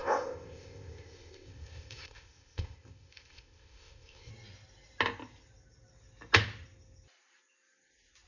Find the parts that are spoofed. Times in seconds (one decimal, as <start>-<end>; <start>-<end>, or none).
0.0-4.3